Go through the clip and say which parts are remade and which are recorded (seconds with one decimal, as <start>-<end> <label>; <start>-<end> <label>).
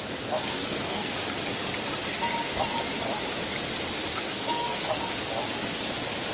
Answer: 0.0-0.6 recorded; 0.6-1.1 remade; 1.1-4.1 recorded; 4.1-5.0 remade; 5.0-6.3 recorded